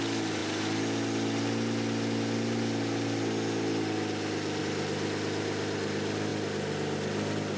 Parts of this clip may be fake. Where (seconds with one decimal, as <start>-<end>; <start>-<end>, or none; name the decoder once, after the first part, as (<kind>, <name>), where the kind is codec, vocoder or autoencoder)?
none